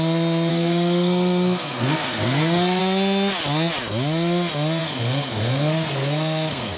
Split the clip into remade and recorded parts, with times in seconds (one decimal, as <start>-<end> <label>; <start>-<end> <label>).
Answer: 0.0-0.5 recorded; 0.5-2.8 remade; 2.8-4.8 recorded; 4.8-6.8 remade